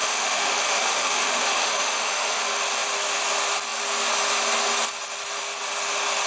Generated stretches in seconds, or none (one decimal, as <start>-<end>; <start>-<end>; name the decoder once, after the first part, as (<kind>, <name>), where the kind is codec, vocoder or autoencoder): 0.0-2.4 (autoencoder, DAC-VAE)